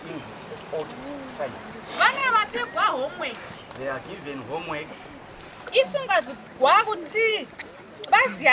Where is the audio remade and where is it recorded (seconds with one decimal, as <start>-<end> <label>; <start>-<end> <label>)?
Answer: 0.0-8.5 recorded